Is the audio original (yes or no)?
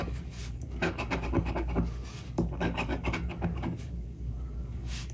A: no